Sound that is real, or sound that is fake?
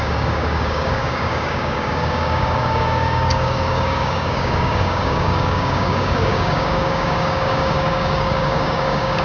fake